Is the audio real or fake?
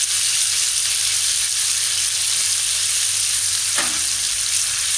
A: real